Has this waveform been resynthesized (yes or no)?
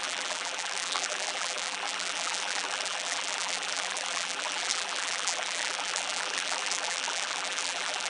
yes